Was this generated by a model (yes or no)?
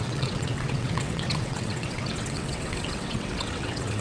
yes